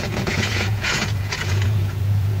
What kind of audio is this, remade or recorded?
remade